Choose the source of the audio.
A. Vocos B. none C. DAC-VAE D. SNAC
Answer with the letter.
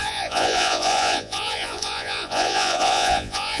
A